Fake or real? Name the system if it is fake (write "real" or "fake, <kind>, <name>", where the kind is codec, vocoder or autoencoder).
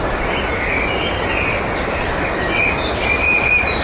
real